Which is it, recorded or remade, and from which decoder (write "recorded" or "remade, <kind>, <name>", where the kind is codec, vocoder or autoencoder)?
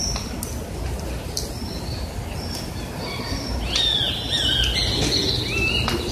recorded